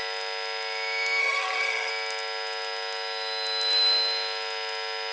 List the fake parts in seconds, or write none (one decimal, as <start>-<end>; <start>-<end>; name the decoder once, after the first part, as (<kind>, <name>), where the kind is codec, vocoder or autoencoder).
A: 1.2-1.9 (codec, SNAC)